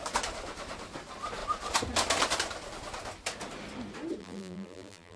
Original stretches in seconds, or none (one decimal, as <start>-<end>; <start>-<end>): 0.0-4.2